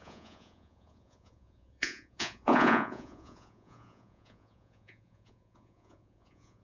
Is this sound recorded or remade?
remade